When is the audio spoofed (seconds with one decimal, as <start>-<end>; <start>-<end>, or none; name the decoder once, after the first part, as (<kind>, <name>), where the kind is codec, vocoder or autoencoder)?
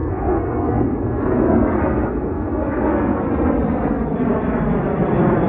0.0-3.3 (codec, SNAC)